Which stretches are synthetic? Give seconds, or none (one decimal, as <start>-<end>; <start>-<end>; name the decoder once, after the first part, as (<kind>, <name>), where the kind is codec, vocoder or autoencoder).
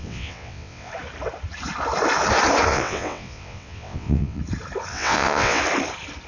0.0-0.9 (vocoder, WaveNeXt); 2.7-4.4; 4.9-5.6